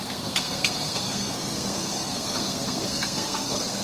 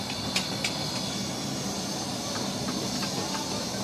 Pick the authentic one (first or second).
second